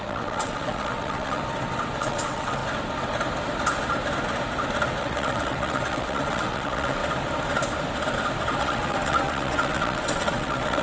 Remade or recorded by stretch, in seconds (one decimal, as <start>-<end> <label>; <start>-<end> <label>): 0.0-1.4 remade; 1.4-2.0 recorded; 2.0-2.6 remade; 2.6-5.0 recorded; 5.0-7.0 remade; 7.0-8.6 recorded; 8.6-10.8 remade